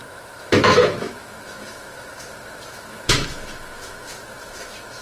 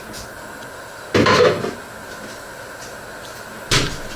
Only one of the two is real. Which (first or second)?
second